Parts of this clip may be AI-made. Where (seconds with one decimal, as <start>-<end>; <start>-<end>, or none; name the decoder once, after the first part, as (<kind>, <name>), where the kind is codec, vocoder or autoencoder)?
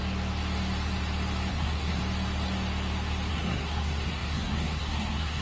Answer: 1.5-2.0 (codec, SNAC); 3.3-5.4